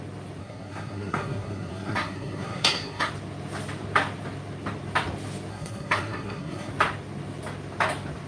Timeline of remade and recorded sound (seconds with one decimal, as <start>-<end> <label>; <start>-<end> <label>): 0.0-0.4 recorded; 0.4-3.1 remade; 3.1-5.5 recorded; 5.5-6.7 remade; 6.7-8.3 recorded